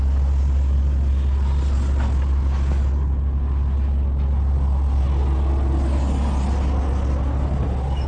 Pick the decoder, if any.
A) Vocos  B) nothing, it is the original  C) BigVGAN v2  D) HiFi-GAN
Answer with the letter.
B